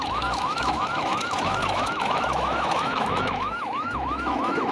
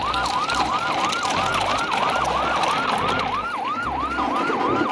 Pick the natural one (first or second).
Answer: second